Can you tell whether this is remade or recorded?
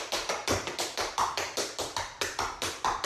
recorded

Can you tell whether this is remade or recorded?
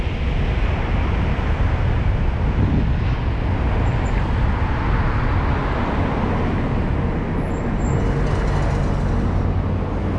recorded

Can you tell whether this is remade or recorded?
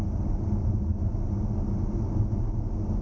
recorded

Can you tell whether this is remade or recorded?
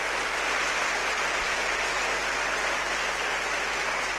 recorded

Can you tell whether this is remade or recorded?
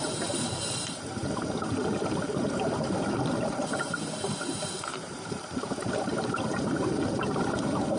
remade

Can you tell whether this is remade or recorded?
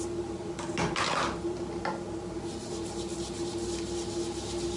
recorded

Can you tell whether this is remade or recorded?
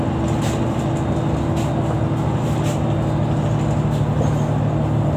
recorded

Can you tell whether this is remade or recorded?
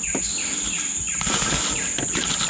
recorded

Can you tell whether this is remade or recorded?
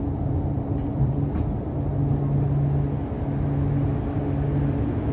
recorded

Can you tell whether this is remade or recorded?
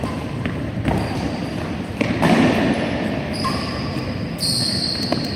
remade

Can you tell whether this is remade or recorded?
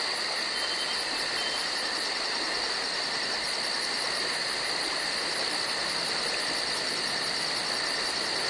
recorded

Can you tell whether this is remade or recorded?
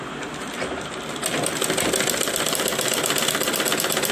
recorded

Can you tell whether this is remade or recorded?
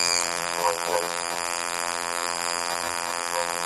remade